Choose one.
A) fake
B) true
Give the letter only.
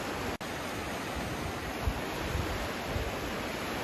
B